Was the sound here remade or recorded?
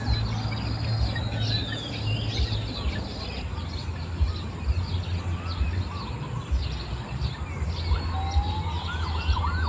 recorded